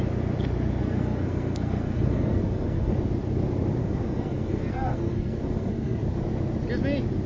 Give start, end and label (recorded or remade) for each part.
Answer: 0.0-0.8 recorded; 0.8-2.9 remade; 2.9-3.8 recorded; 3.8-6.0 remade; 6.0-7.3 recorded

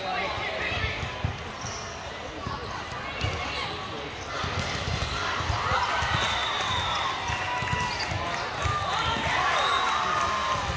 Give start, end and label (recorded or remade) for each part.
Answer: 0.0-10.8 recorded